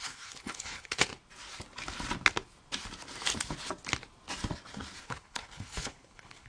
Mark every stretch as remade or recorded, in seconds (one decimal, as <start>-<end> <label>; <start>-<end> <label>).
0.0-1.1 remade; 1.1-5.0 recorded; 5.0-6.5 remade